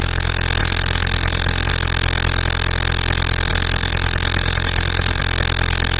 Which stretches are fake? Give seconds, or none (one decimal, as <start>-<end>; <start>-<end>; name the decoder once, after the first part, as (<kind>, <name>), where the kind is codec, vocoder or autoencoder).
0.6-1.7 (vocoder, BigVGAN v2); 3.5-5.2

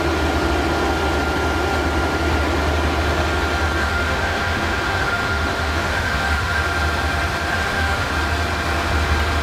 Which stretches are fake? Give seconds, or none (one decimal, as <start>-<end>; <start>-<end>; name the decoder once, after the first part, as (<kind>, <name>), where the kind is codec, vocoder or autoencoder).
3.8-6.6 (autoencoder, DAC-VAE); 7.5-8.1

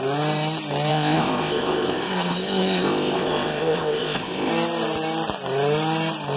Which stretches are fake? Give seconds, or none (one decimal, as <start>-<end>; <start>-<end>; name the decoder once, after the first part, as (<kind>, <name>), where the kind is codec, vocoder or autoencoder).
0.9-4.5 (codec, ZipCodec)

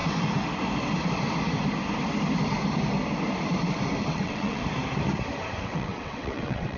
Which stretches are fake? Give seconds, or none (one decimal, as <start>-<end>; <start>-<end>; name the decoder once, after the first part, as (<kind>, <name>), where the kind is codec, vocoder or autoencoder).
4.0-4.6 (vocoder, WaveNeXt); 5.6-6.8